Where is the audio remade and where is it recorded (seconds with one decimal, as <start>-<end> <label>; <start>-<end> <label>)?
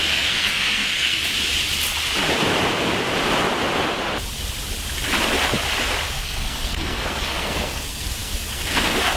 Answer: 0.0-1.2 remade; 1.2-6.1 recorded; 6.1-9.2 remade